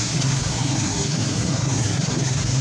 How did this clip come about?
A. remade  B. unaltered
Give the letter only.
A